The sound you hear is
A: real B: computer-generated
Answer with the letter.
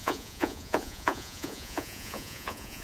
B